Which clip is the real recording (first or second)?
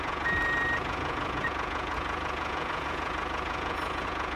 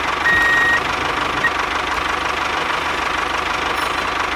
second